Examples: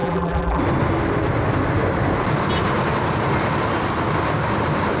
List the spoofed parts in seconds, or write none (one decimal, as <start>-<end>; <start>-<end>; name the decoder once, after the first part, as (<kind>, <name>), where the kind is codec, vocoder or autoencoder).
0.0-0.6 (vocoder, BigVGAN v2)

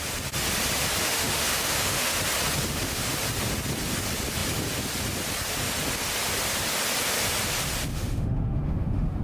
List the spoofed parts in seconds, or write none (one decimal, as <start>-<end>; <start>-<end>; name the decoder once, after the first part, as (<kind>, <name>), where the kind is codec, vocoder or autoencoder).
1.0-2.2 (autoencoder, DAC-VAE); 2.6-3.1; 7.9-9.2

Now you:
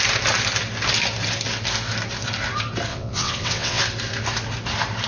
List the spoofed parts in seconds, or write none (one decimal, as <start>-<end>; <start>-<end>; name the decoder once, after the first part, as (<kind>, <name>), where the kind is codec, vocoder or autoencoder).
2.9-3.8 (vocoder, WaveNeXt)